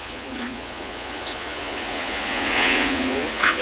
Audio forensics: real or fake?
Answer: fake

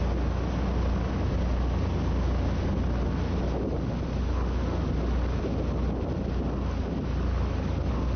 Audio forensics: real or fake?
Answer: real